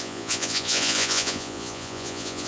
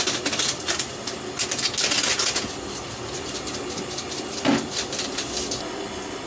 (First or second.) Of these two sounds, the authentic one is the second